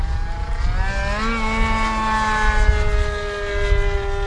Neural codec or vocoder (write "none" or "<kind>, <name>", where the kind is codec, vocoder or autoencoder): none